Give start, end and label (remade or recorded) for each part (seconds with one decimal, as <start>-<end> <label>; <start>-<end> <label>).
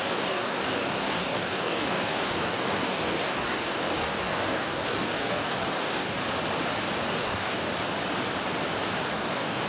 0.0-6.2 remade; 6.2-7.1 recorded; 7.1-7.7 remade; 7.7-9.1 recorded; 9.1-9.7 remade